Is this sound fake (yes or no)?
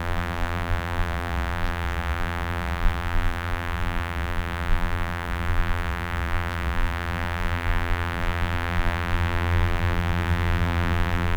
yes